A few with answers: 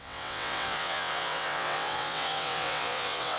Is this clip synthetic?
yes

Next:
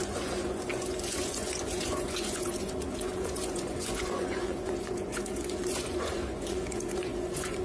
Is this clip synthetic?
yes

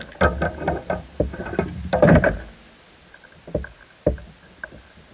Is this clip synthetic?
no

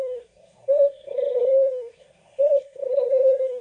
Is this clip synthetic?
yes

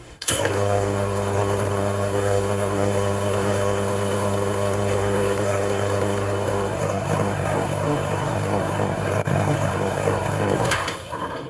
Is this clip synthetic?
yes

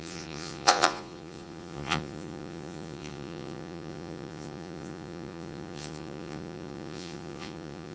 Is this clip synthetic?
yes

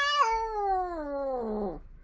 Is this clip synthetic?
yes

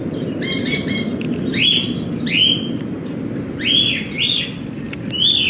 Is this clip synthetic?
no